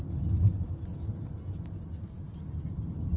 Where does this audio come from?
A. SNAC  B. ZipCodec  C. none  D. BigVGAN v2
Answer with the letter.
C